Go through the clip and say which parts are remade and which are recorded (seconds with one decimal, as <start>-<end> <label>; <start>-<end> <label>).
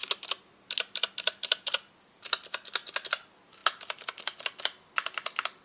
0.0-5.6 recorded